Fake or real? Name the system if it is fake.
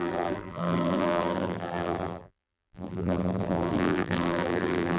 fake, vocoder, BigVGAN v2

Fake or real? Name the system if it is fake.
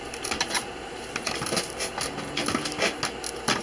real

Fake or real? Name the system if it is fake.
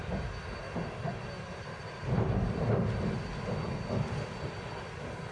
real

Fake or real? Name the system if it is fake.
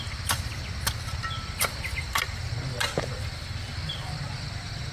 real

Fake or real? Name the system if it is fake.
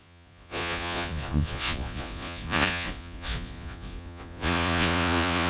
fake, vocoder, Vocos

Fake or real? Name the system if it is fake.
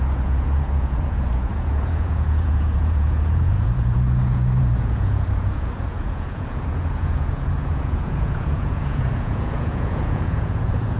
fake, vocoder, Vocos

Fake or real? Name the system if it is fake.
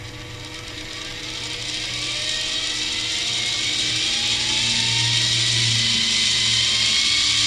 real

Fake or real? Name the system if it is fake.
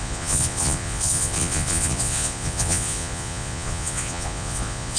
fake, vocoder, Vocos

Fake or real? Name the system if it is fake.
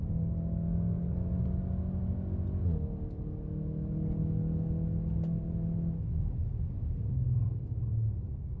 real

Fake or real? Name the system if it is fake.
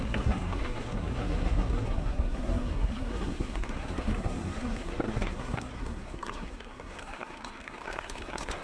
fake, codec, SNAC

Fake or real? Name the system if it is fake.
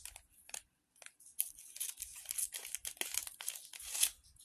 real